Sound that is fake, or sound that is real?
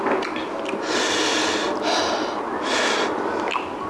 real